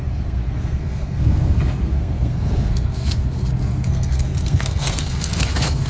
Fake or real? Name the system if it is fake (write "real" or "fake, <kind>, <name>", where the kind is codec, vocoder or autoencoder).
fake, codec, SNAC